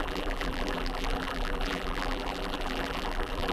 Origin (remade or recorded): remade